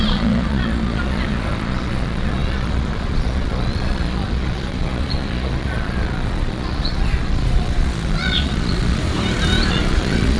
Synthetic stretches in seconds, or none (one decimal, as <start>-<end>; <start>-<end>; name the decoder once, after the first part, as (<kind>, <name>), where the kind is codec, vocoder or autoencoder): 0.0-9.0 (vocoder, Vocos); 9.7-10.4